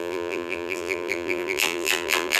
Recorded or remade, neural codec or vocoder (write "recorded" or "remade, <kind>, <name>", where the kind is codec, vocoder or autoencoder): remade, vocoder, BigVGAN v2